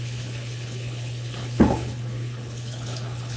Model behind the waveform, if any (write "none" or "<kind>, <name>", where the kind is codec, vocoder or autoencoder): codec, HILCodec